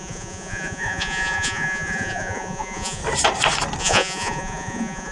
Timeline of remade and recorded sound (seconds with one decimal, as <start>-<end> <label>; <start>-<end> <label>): 0.0-3.0 remade; 3.0-3.8 recorded; 3.8-5.1 remade

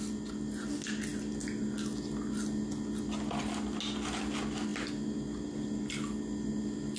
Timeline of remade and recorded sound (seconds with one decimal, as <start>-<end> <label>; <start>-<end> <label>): 0.0-7.0 recorded

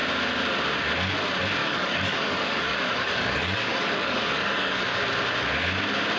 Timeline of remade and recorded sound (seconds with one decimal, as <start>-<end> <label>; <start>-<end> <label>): 0.0-1.6 recorded; 1.6-5.0 remade; 5.0-6.2 recorded

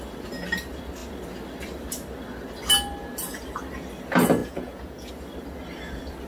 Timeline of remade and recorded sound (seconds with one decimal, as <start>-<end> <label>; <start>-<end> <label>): 0.0-4.4 recorded; 4.4-5.1 remade; 5.1-6.3 recorded